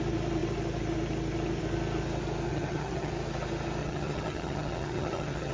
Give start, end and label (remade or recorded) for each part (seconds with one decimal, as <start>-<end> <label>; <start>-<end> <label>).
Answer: 0.0-2.5 recorded; 2.5-3.1 remade; 3.1-3.8 recorded; 3.8-5.5 remade